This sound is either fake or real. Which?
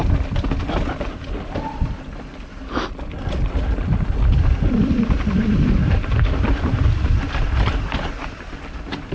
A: real